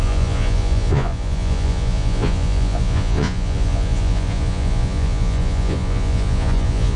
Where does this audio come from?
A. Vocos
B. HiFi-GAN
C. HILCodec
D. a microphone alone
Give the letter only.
A